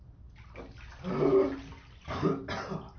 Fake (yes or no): no